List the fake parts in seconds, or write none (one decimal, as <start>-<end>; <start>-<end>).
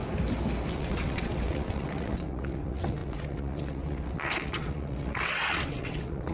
0.7-6.3